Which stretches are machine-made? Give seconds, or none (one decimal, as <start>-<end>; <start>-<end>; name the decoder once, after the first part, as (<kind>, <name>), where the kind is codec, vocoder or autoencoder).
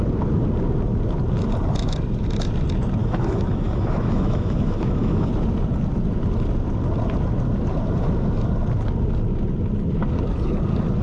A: 3.0-5.3 (autoencoder, DAC-VAE)